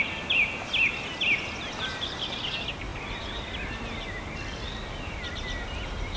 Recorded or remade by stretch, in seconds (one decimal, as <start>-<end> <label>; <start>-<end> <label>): 0.0-6.2 recorded